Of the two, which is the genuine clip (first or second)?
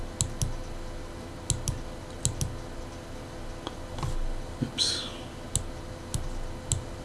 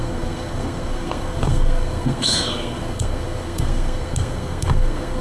first